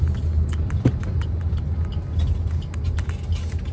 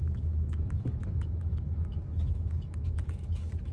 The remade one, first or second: second